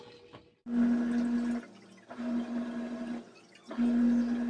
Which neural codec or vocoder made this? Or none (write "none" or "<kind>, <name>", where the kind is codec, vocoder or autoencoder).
none